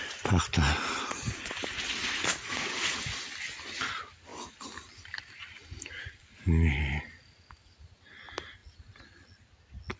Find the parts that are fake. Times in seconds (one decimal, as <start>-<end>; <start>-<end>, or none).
none